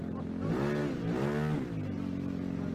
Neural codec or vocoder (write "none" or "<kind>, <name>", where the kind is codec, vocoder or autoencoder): none